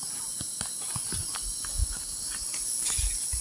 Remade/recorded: recorded